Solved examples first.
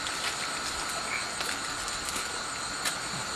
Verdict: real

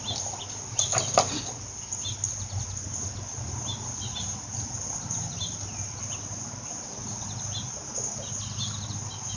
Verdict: real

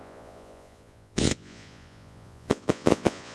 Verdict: fake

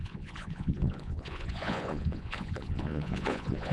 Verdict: fake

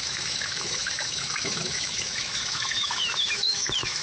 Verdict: fake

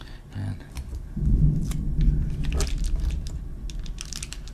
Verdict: real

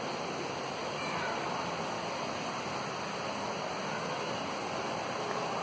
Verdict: real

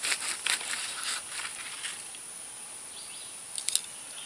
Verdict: real